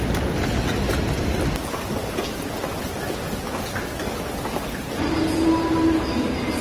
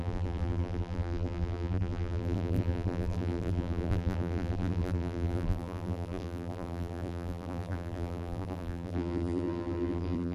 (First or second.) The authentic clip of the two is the first